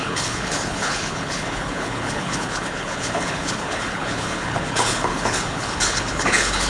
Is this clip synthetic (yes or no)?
yes